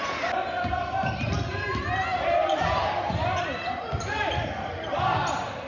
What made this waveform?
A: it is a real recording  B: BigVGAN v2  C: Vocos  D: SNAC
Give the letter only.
B